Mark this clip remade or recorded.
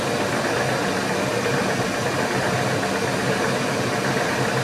recorded